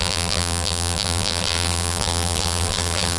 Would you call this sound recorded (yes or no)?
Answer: no